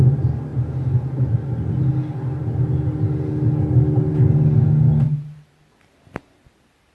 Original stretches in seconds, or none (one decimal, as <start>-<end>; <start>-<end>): 0.0-6.9